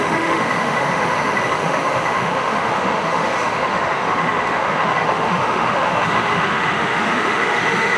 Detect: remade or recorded remade